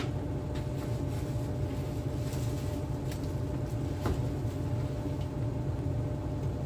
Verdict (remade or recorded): recorded